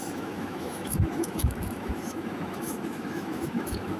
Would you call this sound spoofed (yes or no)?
yes